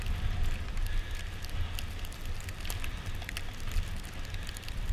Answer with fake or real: real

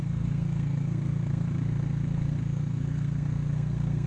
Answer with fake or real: fake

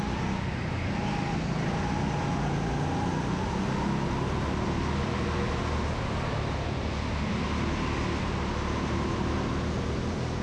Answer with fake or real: real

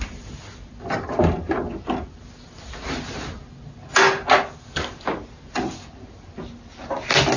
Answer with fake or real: real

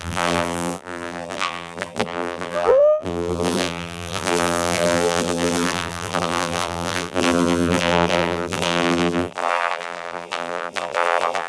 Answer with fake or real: fake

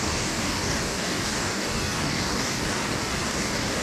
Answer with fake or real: fake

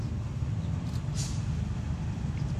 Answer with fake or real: real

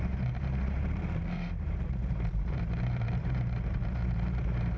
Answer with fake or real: fake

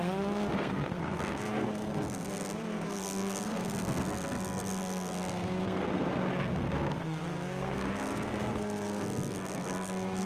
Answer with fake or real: fake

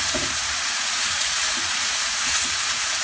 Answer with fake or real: fake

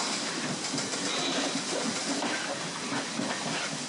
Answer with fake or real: real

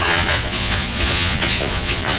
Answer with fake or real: fake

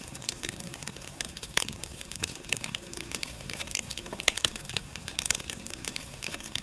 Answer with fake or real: fake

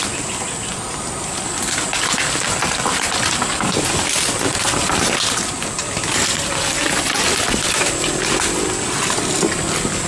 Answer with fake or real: real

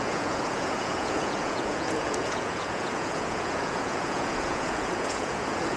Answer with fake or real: fake